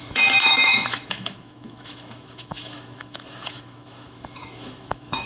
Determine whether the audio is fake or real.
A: fake